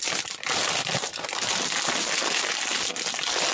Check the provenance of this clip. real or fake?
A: real